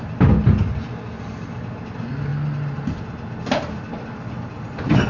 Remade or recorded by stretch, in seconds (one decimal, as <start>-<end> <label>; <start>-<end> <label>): 0.0-5.1 recorded